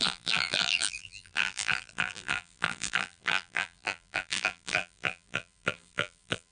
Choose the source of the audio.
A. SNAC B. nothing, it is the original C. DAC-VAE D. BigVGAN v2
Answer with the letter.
D